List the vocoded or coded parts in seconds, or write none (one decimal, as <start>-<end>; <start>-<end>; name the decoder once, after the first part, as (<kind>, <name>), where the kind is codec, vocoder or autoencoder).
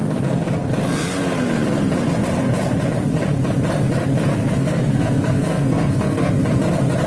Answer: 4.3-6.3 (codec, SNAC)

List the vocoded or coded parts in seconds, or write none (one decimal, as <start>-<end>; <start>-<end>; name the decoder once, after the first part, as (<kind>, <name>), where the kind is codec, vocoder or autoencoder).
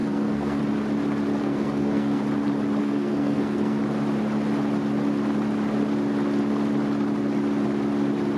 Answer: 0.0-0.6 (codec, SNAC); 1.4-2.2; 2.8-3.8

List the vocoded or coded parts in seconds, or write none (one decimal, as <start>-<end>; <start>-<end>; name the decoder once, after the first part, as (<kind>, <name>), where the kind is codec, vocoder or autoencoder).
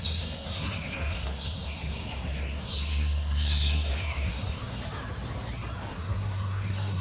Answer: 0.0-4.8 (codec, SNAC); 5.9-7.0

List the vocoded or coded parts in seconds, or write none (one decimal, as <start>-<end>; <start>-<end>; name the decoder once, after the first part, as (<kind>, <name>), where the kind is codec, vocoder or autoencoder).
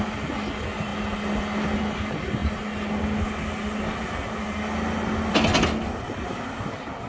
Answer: none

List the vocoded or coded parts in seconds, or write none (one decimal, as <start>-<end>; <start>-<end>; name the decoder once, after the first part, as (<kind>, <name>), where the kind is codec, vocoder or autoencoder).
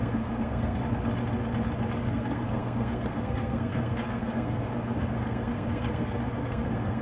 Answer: 0.0-0.8 (codec, SNAC); 2.1-7.0